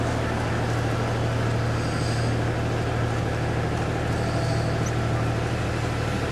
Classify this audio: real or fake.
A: real